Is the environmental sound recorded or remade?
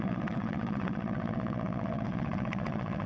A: remade